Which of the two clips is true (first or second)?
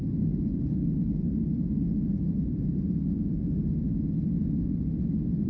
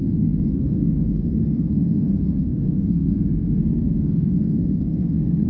first